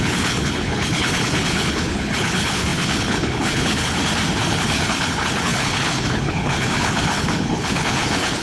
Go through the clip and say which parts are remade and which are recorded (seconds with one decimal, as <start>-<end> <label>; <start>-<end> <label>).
0.0-4.0 remade; 4.0-4.5 recorded; 4.5-8.4 remade